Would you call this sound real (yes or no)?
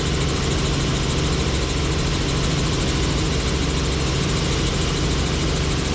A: yes